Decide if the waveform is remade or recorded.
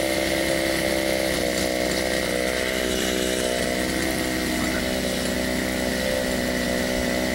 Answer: recorded